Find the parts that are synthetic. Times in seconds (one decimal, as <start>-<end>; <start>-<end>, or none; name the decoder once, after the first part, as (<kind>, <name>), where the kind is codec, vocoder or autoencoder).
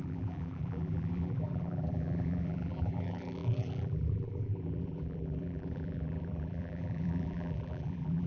0.0-8.3 (vocoder, BigVGAN v2)